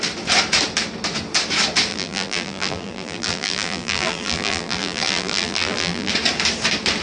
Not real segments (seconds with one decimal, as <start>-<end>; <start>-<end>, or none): 1.9-6.1